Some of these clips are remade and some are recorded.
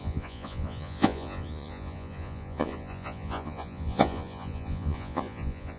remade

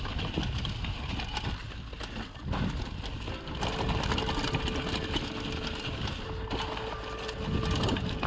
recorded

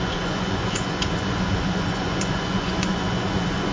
remade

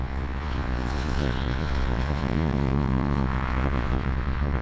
remade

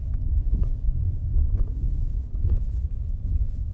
remade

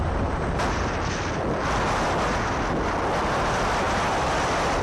recorded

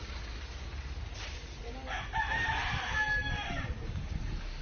recorded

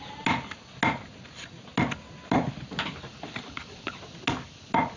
recorded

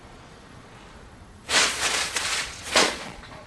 remade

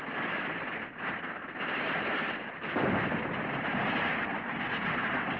recorded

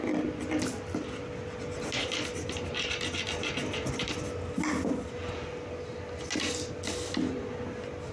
recorded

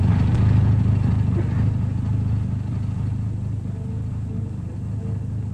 recorded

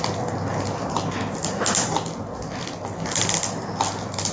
recorded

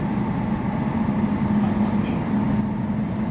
recorded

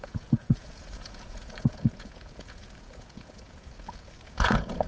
remade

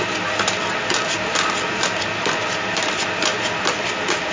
recorded